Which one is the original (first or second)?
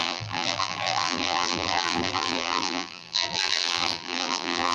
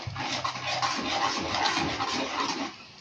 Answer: second